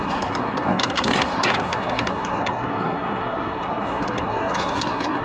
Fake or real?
fake